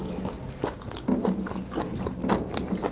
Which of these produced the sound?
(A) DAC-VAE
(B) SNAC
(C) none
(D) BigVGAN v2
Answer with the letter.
C